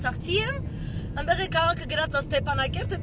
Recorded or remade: recorded